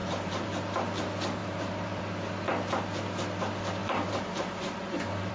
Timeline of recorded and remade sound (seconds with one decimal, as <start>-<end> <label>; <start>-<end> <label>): 0.0-0.5 remade; 0.5-1.4 recorded; 1.4-2.0 remade; 2.0-3.8 recorded; 3.8-5.3 remade